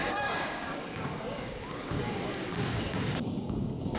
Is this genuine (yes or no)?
no